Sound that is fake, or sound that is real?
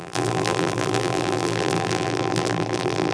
fake